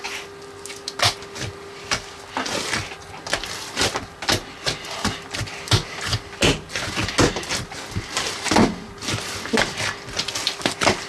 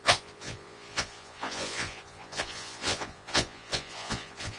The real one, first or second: first